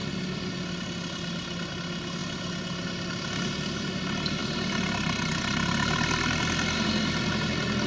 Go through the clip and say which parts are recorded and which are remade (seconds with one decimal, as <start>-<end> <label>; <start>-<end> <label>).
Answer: 0.0-4.4 recorded; 4.4-7.3 remade; 7.3-7.9 recorded